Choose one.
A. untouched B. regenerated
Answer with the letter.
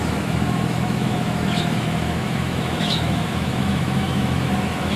B